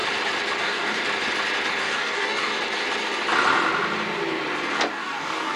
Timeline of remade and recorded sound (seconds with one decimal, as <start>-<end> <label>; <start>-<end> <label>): 0.0-0.6 recorded; 0.6-1.0 remade; 1.0-1.8 recorded; 1.8-2.5 remade; 2.5-4.9 recorded; 4.9-5.6 remade